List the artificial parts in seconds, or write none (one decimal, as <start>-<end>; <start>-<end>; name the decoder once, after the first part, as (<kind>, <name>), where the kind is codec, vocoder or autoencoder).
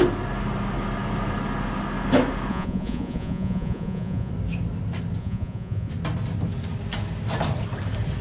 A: 2.5-4.3 (vocoder, Vocos); 5.2-5.9